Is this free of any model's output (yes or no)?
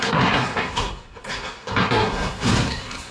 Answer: no